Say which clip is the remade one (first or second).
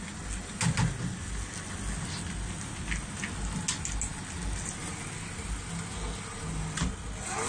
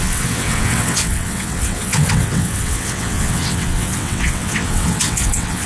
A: second